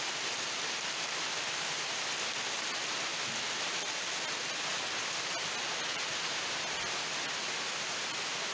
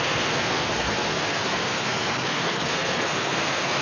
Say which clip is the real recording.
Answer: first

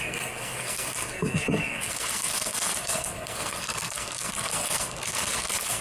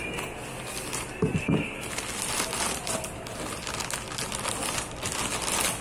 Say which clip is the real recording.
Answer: second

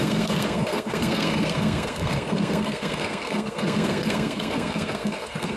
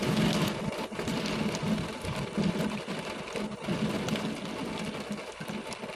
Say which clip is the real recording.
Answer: second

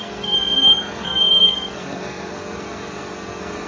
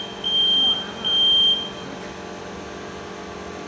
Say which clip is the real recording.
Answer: second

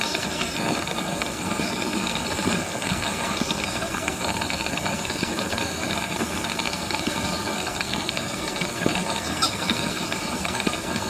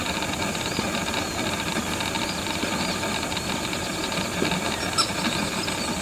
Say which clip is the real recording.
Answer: second